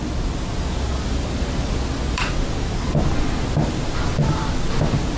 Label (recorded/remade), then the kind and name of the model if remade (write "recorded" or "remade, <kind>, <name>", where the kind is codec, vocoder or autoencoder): recorded